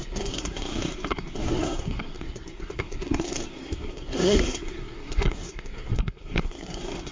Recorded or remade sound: remade